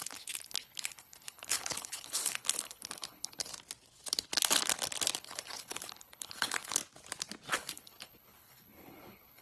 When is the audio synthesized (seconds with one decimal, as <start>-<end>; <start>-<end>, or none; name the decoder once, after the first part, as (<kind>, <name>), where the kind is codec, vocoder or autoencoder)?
0.0-3.5 (codec, HILCodec); 5.2-6.8; 7.5-9.4